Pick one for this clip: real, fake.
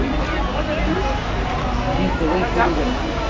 real